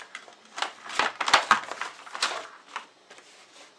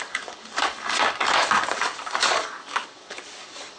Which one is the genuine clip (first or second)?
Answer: first